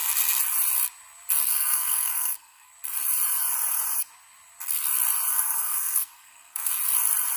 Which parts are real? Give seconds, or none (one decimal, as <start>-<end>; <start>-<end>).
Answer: 0.0-1.5; 2.7-5.3; 6.7-7.4